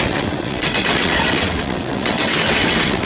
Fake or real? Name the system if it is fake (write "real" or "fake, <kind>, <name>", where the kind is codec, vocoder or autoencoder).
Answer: fake, vocoder, WaveNeXt